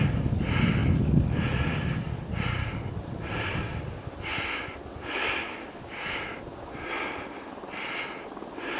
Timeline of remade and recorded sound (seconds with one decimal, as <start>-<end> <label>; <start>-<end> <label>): 0.0-8.8 recorded